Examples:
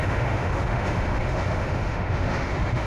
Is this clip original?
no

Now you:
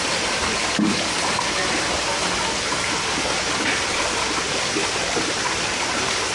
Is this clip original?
yes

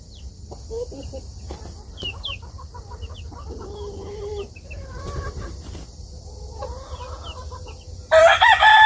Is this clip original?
yes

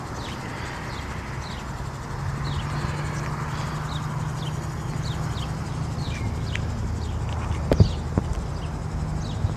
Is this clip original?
yes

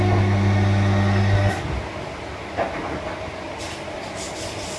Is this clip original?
yes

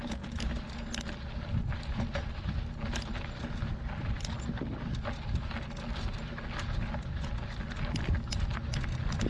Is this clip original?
yes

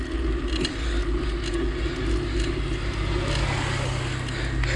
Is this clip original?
yes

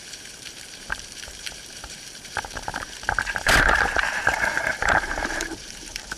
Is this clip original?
no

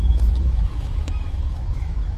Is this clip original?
no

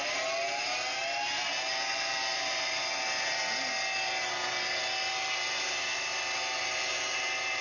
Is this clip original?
yes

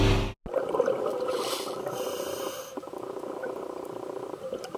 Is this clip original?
yes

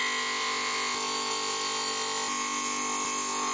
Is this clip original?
yes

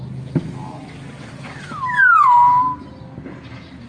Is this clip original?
yes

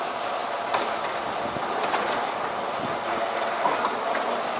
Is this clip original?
yes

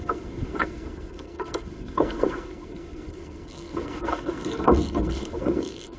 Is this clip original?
no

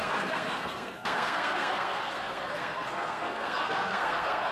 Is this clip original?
no